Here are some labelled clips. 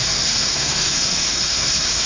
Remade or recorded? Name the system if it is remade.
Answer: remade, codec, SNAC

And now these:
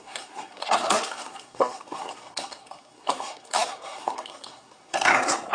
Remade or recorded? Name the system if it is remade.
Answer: remade, codec, SNAC